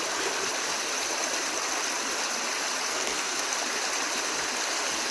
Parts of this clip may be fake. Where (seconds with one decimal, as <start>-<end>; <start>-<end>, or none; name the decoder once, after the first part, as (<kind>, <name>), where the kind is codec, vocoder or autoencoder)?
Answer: 2.9-3.4 (codec, SNAC)